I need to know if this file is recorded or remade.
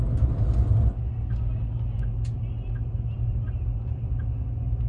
recorded